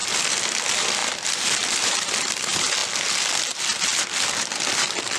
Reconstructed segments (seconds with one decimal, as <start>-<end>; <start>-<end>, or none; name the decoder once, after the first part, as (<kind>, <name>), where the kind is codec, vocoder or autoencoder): none

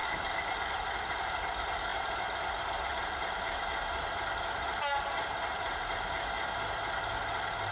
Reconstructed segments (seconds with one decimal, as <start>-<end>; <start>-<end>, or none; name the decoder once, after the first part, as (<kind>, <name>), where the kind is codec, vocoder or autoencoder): none

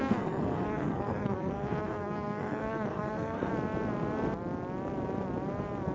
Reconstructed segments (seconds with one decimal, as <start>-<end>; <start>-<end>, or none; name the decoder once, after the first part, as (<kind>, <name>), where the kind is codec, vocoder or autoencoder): 0.0-3.5 (codec, SNAC)

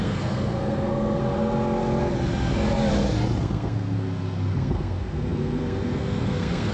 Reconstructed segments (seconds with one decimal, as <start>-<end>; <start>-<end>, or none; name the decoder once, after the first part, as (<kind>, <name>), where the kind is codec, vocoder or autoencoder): 0.0-1.2 (codec, SNAC); 3.4-6.7

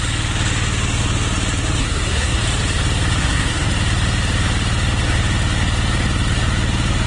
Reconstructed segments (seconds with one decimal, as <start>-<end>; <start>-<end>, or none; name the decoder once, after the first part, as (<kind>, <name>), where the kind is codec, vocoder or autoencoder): 1.8-2.4 (codec, SNAC); 3.2-3.7